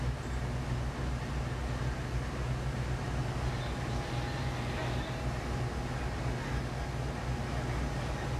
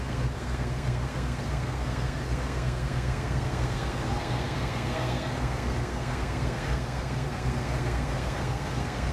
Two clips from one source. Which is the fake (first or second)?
second